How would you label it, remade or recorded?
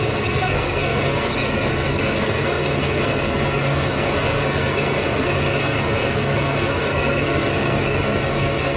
remade